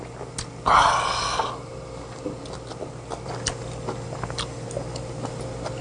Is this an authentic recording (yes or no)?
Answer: yes